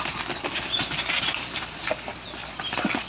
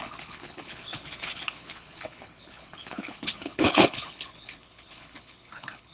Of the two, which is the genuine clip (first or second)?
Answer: first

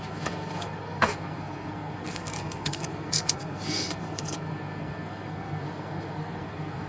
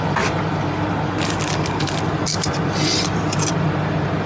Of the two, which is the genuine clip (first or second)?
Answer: second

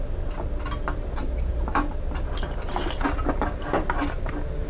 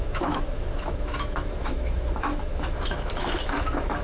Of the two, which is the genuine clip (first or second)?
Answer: first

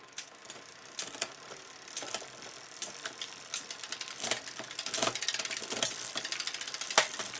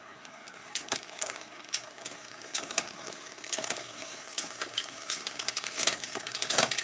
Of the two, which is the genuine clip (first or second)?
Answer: first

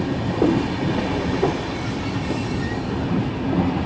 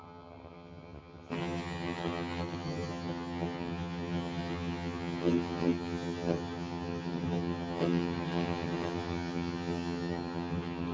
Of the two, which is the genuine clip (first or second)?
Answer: first